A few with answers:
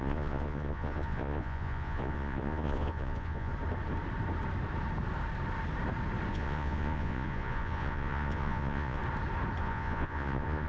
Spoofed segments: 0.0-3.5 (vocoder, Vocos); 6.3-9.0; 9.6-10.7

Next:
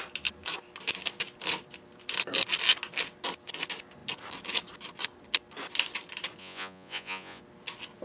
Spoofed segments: 6.4-7.4 (vocoder, Vocos)

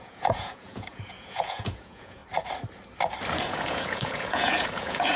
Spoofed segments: 0.0-2.2 (vocoder, Vocos); 3.4-5.2